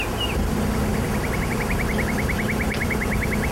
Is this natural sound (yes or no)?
yes